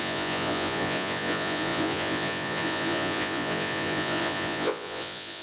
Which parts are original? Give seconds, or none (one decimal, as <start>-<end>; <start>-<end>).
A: none